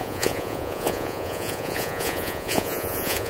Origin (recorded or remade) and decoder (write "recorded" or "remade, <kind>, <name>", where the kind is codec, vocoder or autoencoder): remade, vocoder, Vocos